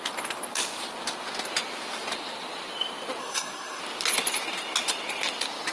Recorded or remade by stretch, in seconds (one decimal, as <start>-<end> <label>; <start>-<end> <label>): 0.0-3.2 recorded; 3.2-3.8 remade; 3.8-5.7 recorded